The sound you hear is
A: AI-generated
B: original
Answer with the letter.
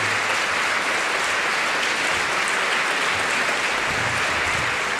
B